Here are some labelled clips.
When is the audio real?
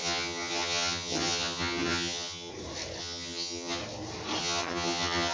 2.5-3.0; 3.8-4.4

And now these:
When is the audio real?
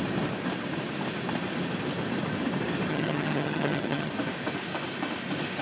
0.0-2.9; 4.1-5.6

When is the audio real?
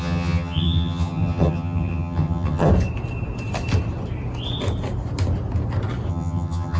2.7-6.1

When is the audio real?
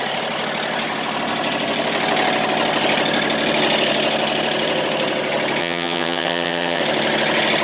0.0-5.6; 6.8-7.6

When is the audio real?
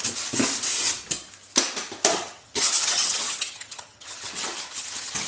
0.0-2.1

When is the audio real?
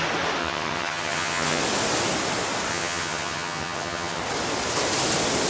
0.0-0.4; 1.6-2.7; 4.2-5.5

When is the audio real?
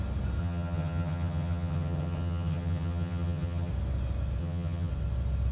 0.0-0.4; 3.7-4.4; 4.9-5.5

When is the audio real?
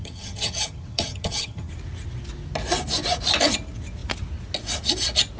1.7-5.4